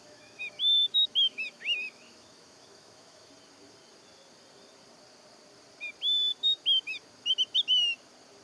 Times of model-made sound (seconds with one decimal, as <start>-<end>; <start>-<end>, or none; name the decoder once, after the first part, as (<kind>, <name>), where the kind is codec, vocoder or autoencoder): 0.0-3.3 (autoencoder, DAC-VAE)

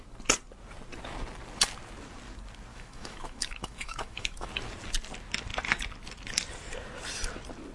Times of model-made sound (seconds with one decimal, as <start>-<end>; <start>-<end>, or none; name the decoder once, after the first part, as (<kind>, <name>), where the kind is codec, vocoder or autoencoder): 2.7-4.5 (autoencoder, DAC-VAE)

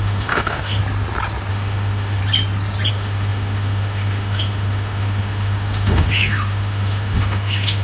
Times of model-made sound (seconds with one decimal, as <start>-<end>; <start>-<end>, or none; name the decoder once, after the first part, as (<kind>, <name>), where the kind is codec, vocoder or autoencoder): 0.0-0.8 (autoencoder, DAC-VAE); 1.5-2.2; 2.9-7.8

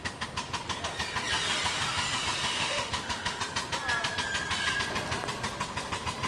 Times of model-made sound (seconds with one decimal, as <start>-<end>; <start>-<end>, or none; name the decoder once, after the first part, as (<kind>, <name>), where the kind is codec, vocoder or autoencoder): 2.5-3.4 (autoencoder, DAC-VAE)

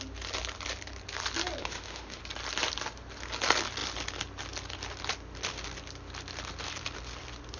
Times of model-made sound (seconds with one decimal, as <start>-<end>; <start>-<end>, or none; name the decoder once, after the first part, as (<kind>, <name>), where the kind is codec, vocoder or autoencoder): 1.6-2.2 (autoencoder, DAC-VAE)